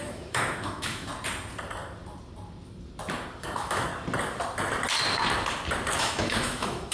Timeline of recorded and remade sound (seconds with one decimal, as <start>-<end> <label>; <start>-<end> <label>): 0.0-1.1 remade; 1.1-3.4 recorded; 3.4-3.9 remade; 3.9-6.0 recorded; 6.0-6.9 remade